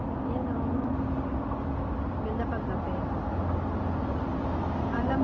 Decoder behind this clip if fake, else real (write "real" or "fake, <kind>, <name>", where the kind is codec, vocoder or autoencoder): real